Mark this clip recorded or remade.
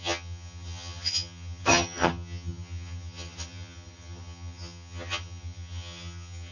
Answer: remade